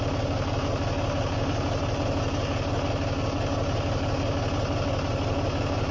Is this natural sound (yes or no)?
yes